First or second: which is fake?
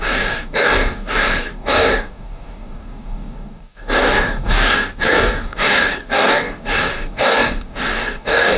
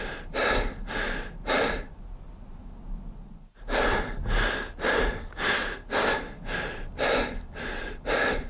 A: first